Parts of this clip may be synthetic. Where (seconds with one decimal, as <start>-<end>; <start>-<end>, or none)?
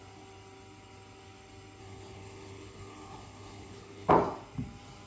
1.8-4.1